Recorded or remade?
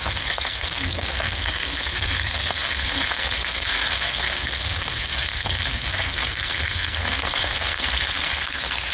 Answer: remade